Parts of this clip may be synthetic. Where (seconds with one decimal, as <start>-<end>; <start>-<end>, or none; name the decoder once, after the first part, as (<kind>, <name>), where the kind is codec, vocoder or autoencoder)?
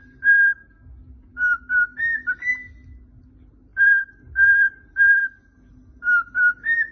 none